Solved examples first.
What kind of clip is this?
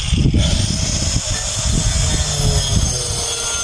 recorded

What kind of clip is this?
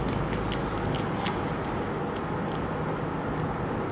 recorded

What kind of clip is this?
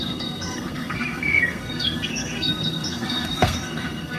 remade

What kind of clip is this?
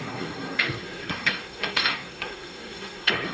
remade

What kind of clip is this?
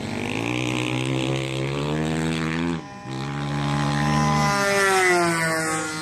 recorded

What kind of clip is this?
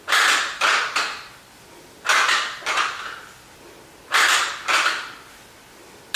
recorded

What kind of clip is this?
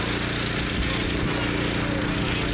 recorded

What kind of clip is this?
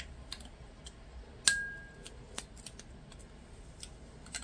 recorded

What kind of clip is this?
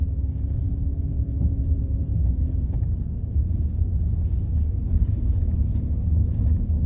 recorded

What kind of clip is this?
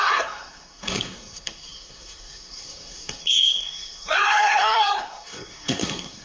remade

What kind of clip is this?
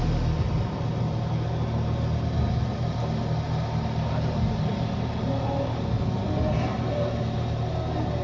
recorded